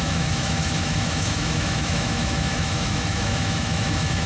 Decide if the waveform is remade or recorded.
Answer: remade